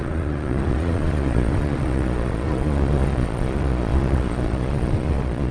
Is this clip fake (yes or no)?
yes